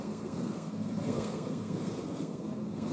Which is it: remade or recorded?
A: remade